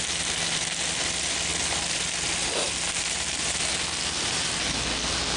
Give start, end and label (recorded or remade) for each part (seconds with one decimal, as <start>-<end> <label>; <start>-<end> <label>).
0.0-5.4 recorded